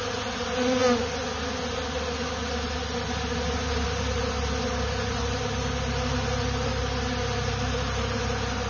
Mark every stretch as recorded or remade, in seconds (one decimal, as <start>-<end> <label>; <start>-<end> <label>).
0.0-8.7 recorded